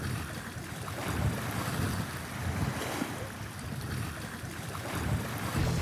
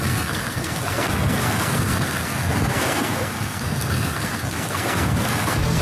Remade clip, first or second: second